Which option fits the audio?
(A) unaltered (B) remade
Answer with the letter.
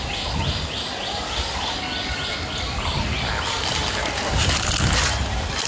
A